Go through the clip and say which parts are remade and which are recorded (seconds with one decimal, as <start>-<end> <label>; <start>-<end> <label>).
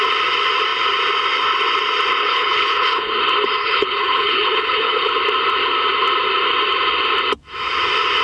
0.0-2.2 recorded; 2.2-3.1 remade; 3.1-3.6 recorded; 3.6-5.1 remade; 5.1-8.2 recorded